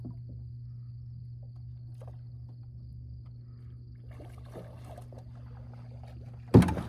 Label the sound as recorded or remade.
recorded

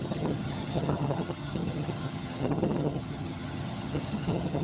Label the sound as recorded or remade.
remade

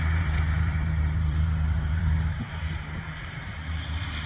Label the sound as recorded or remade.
remade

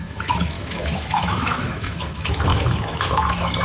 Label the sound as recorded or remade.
remade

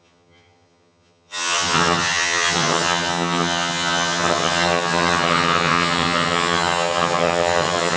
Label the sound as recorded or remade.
remade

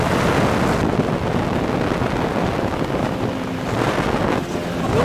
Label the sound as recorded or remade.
recorded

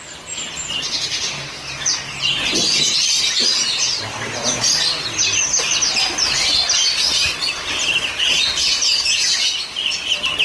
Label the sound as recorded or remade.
recorded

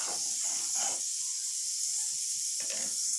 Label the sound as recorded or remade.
recorded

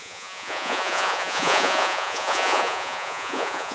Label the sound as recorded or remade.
remade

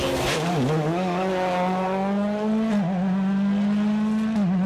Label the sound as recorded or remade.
recorded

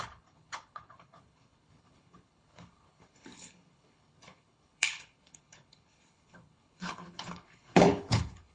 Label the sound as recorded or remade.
remade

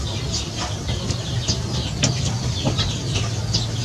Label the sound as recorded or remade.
recorded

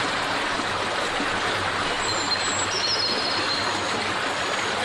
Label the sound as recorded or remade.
recorded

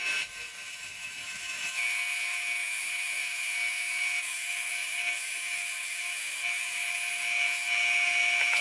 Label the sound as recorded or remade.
remade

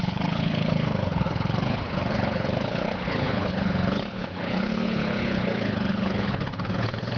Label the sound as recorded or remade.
remade